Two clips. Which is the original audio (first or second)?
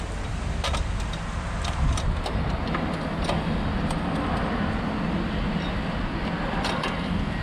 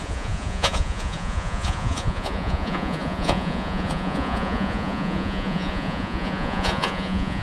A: first